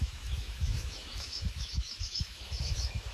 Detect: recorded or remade remade